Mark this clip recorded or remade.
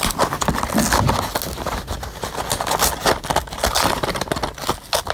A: recorded